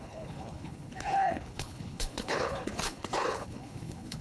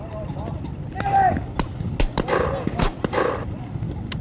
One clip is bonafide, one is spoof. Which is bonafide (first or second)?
second